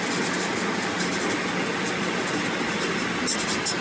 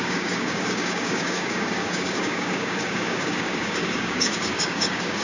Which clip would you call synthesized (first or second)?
second